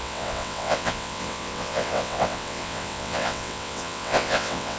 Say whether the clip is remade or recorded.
remade